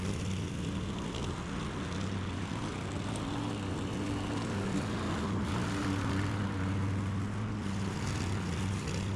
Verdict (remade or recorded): recorded